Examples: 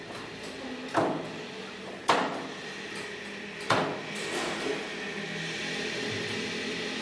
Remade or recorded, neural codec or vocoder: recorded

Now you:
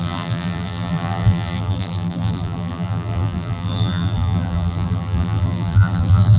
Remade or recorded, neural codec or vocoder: remade, vocoder, BigVGAN v2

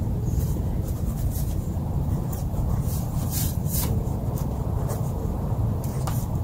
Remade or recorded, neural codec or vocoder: remade, vocoder, BigVGAN v2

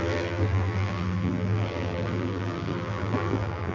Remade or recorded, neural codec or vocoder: remade, vocoder, BigVGAN v2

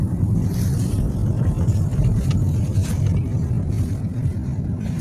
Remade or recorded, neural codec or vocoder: remade, vocoder, BigVGAN v2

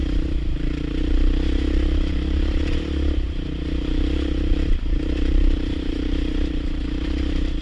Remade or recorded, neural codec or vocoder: remade, vocoder, BigVGAN v2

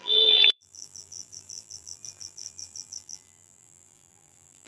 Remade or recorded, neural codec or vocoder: remade, vocoder, BigVGAN v2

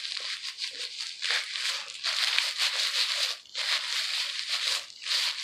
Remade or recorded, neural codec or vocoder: recorded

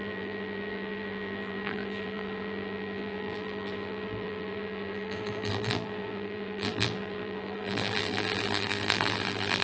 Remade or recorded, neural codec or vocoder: remade, vocoder, BigVGAN v2